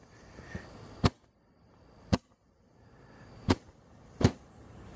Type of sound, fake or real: fake